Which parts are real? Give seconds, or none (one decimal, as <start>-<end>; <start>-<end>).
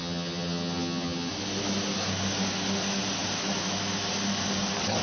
1.3-5.0